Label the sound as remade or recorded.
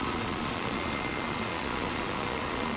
remade